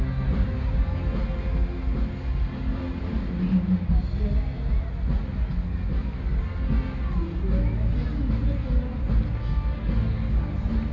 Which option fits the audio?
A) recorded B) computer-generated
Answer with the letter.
A